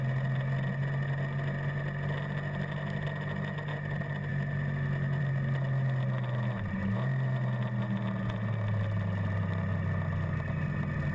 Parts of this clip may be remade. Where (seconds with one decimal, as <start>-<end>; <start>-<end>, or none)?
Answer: none